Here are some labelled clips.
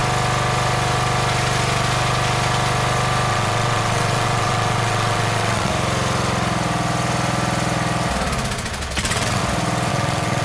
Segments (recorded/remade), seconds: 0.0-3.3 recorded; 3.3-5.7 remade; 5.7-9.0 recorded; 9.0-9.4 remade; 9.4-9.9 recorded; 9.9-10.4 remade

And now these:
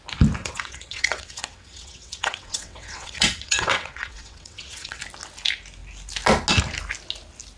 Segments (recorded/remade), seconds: 0.0-0.4 recorded; 0.4-5.0 remade; 5.0-7.6 recorded

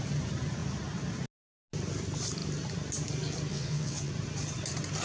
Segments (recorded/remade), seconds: 0.0-3.5 recorded; 3.5-4.1 remade; 4.1-5.0 recorded

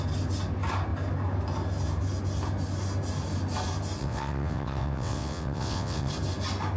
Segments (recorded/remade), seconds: 0.0-4.0 recorded; 4.0-6.1 remade; 6.1-6.8 recorded

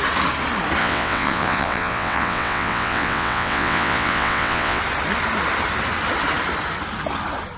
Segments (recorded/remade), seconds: 0.0-0.8 recorded; 0.8-4.8 remade; 4.8-7.6 recorded

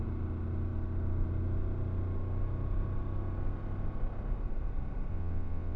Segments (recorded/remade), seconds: 0.0-5.1 recorded; 5.1-5.8 remade

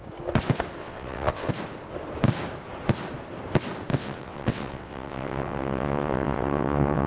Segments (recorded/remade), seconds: 0.0-0.8 recorded; 0.8-1.5 remade; 1.5-3.9 recorded; 3.9-7.1 remade